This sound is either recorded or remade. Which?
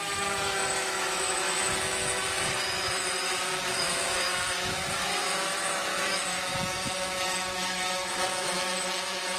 remade